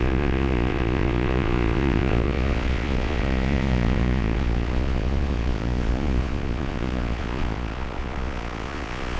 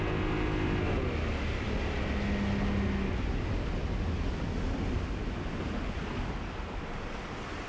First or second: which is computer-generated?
first